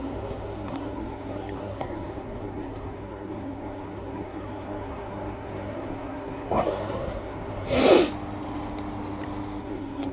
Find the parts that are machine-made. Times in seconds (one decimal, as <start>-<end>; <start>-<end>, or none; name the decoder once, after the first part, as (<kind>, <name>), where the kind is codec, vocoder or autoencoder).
0.0-7.8 (codec, SNAC); 9.6-10.1